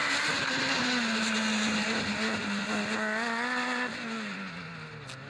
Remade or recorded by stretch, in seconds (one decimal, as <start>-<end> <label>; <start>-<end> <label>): 0.0-5.3 recorded